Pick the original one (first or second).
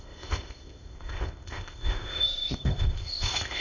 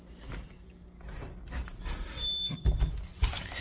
second